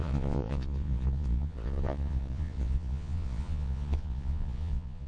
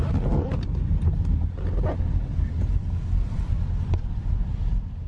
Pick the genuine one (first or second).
second